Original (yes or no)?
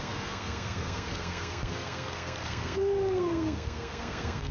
no